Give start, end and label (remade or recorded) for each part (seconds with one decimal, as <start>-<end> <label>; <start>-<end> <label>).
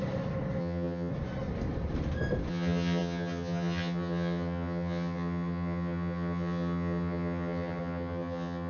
0.0-0.6 recorded; 0.6-1.1 remade; 1.1-2.5 recorded; 2.5-8.7 remade